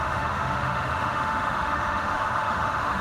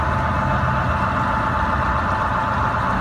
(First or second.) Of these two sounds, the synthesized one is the first